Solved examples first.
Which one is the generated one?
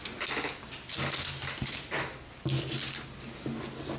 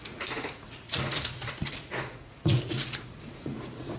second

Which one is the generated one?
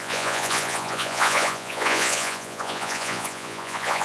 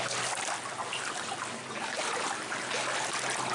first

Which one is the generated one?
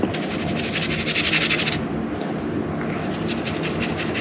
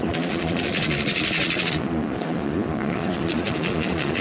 second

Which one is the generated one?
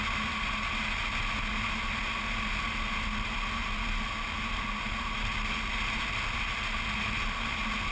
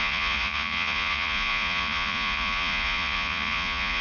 second